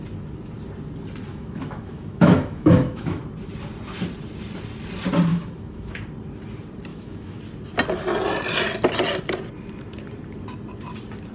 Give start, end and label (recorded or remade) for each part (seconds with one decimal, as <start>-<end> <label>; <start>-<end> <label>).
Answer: 0.0-1.3 recorded; 1.3-3.2 remade; 3.2-5.3 recorded; 5.3-6.0 remade; 6.0-6.9 recorded; 6.9-7.4 remade; 7.4-11.3 recorded